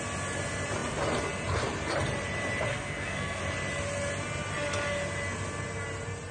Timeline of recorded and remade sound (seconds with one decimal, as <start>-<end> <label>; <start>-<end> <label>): 0.0-2.7 recorded; 2.7-3.4 remade; 3.4-6.3 recorded